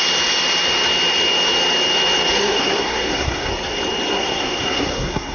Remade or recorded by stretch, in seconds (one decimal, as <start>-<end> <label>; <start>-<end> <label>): 0.0-2.3 recorded; 2.3-3.5 remade; 3.5-4.1 recorded; 4.1-5.3 remade